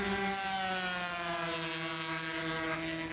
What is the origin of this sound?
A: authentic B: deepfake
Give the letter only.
A